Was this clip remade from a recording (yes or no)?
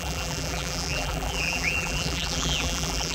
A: yes